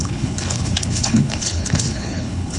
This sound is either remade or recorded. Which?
remade